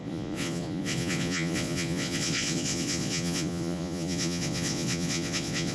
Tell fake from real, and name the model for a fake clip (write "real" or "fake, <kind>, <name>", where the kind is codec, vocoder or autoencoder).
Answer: fake, vocoder, Vocos